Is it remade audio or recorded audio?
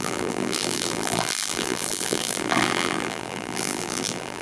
remade